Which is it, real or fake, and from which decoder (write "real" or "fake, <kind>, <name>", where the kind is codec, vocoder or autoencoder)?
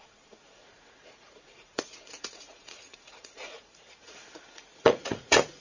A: fake, vocoder, Vocos